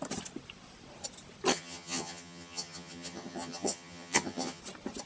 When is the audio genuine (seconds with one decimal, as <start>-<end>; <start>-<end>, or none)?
0.0-1.5; 4.6-5.1

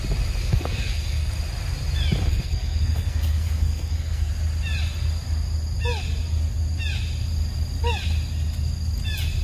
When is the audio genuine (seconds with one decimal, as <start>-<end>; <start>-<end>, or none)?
0.0-0.4; 1.3-2.3; 4.3-9.4

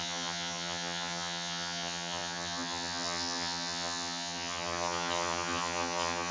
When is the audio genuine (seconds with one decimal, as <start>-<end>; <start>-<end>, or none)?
none

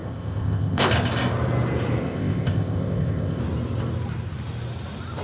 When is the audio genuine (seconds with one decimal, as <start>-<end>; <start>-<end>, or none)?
0.9-2.0; 3.4-5.2

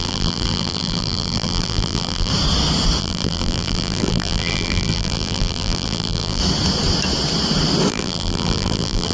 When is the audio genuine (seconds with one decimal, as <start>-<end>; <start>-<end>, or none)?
2.3-3.0; 6.4-7.9

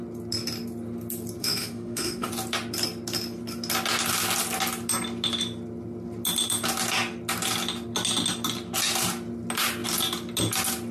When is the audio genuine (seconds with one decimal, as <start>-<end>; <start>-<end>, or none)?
0.0-1.4; 2.3-10.9

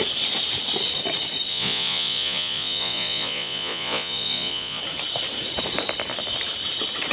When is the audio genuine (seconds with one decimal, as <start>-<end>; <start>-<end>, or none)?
0.0-1.5; 4.8-7.1

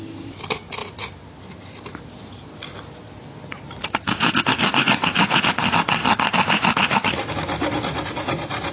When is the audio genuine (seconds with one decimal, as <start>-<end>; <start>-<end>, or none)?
0.0-8.7